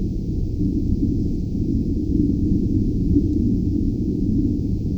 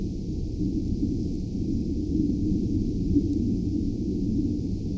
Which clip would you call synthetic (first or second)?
first